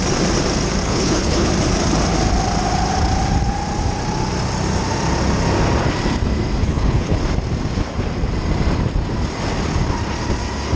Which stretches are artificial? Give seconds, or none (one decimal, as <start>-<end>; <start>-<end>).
0.8-1.5; 6.6-7.2